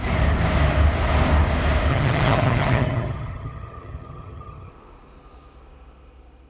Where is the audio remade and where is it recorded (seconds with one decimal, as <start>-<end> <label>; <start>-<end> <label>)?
0.0-1.9 recorded; 1.9-4.7 remade; 4.7-6.5 recorded